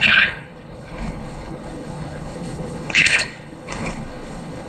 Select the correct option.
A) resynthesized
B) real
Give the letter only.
A